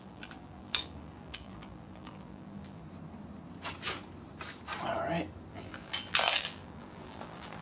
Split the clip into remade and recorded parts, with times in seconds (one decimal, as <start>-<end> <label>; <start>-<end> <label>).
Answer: 0.0-2.8 remade; 2.8-5.5 recorded; 5.5-7.6 remade